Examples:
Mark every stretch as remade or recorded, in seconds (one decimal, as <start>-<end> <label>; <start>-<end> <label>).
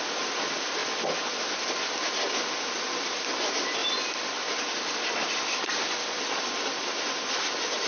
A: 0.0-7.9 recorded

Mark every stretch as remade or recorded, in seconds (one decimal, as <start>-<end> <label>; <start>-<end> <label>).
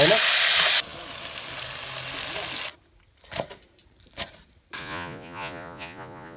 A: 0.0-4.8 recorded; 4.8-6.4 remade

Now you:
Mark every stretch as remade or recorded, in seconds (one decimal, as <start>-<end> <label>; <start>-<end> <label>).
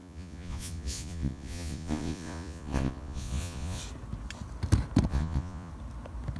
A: 0.0-3.8 remade; 3.8-5.1 recorded; 5.1-5.7 remade; 5.7-6.4 recorded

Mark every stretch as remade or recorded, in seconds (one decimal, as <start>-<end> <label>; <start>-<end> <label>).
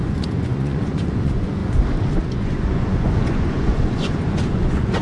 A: 0.0-1.6 remade; 1.6-2.2 recorded; 2.2-5.0 remade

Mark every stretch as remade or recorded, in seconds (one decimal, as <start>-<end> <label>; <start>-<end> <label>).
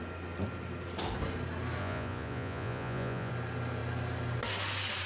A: 0.0-1.8 recorded; 1.8-3.3 remade; 3.3-5.1 recorded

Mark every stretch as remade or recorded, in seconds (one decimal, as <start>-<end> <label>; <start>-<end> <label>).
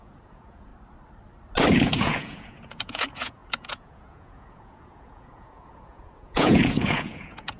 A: 0.0-0.7 remade; 0.7-1.7 recorded; 1.7-7.6 remade